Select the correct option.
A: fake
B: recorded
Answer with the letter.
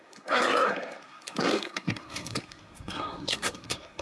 A